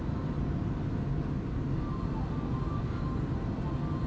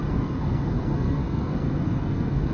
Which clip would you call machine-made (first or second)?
second